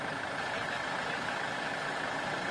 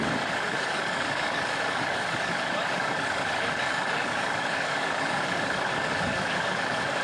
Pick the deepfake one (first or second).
second